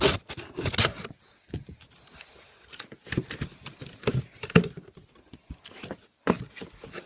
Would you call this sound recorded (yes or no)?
yes